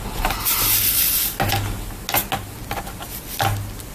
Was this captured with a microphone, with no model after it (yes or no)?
yes